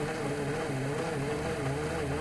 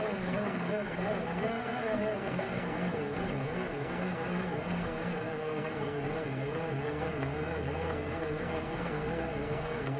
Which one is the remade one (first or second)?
second